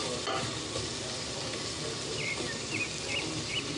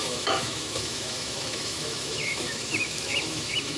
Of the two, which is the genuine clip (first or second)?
first